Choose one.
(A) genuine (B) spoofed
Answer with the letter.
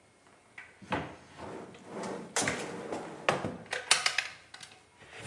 A